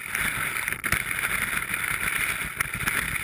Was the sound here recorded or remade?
recorded